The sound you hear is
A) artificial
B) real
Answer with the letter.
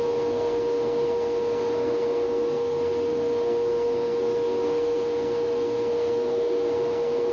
A